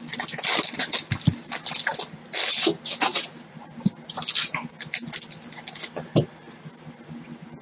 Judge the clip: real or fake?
real